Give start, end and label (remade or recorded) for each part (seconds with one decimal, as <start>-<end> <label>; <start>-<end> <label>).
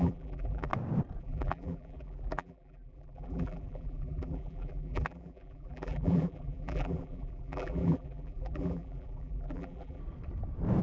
0.0-0.7 remade; 0.7-1.2 recorded; 1.2-10.0 remade; 10.0-10.8 recorded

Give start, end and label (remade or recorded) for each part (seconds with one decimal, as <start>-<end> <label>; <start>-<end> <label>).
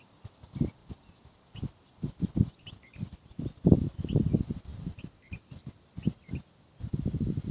0.0-0.8 recorded; 0.8-3.3 remade; 3.3-4.7 recorded; 4.7-5.9 remade; 5.9-7.5 recorded